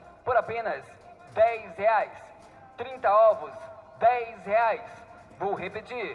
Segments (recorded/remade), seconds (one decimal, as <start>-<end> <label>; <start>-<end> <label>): 0.0-6.1 recorded